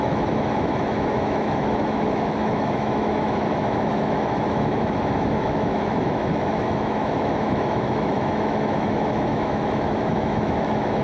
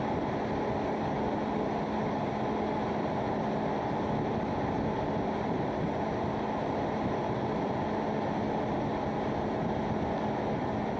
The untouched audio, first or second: second